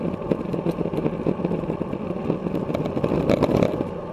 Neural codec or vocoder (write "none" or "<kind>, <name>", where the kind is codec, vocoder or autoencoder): none